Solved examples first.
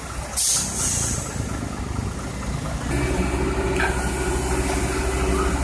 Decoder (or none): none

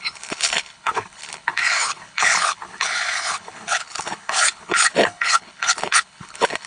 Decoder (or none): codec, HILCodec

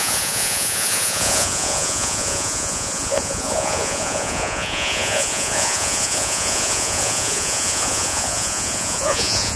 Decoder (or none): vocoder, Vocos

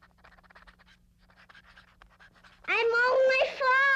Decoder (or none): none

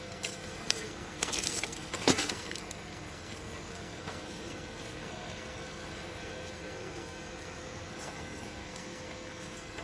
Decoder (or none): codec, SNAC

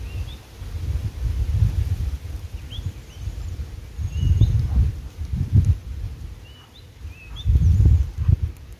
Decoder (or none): none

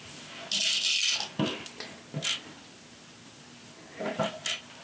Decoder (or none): none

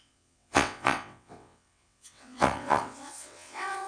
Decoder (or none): vocoder, WaveNeXt